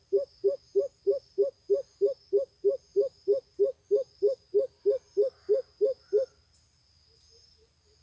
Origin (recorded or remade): recorded